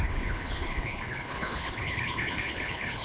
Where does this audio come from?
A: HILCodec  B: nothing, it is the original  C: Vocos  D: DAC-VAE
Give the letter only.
A